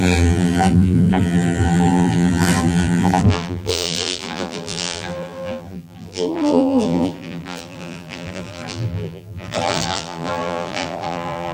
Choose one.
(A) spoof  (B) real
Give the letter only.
A